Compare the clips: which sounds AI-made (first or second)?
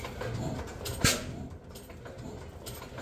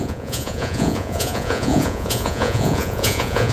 second